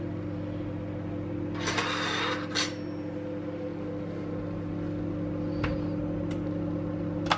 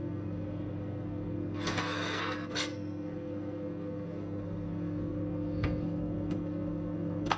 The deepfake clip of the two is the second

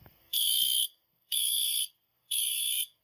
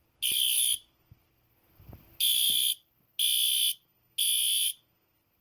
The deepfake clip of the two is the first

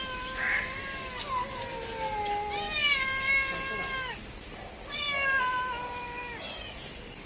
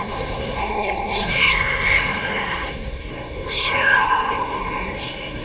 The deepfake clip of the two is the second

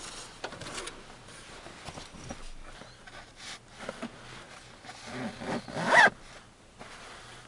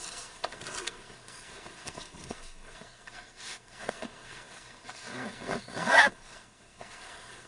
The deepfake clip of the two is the second